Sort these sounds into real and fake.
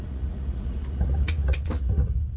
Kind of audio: fake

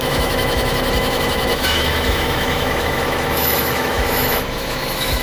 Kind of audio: fake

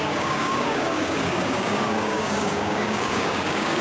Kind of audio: fake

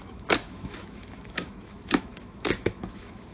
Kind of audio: fake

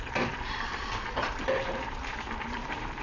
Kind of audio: fake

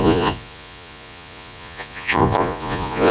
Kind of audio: fake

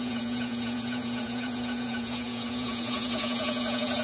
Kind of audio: fake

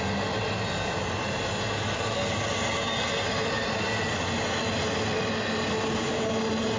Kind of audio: real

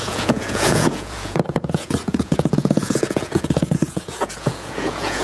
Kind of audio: fake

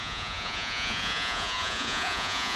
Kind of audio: fake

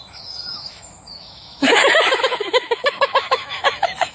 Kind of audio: fake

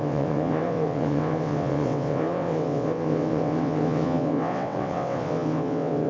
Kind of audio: fake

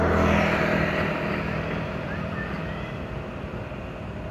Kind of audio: real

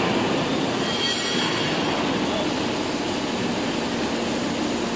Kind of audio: real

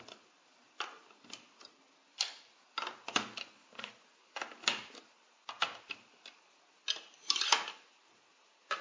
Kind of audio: real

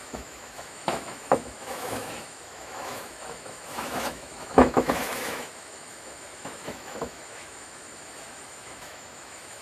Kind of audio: fake